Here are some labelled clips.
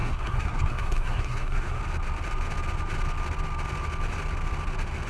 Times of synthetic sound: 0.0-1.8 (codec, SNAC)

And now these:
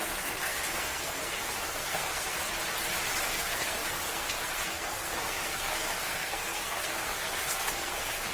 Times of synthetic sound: 0.0-2.4 (codec, SNAC); 3.3-8.3

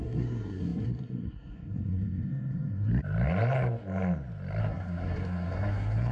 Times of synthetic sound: 0.0-2.9 (codec, SNAC); 4.6-6.1

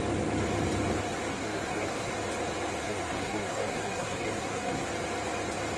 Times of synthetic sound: 1.3-2.1 (codec, SNAC); 2.8-4.9